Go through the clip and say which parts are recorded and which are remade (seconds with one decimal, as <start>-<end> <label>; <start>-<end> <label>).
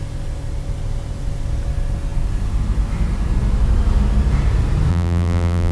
0.0-4.9 recorded; 4.9-5.7 remade